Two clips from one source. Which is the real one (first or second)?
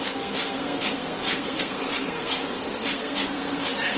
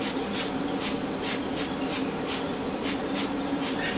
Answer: second